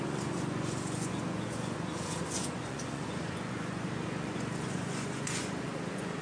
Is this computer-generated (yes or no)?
yes